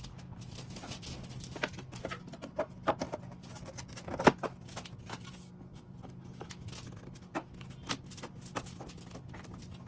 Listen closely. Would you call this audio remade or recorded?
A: recorded